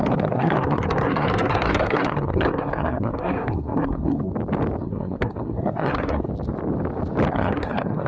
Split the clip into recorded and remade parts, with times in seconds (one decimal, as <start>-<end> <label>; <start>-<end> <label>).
0.0-4.3 remade; 4.3-4.8 recorded; 4.8-6.3 remade; 6.3-7.3 recorded; 7.3-8.1 remade